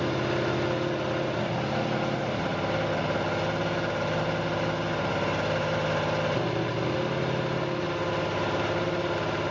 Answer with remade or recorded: recorded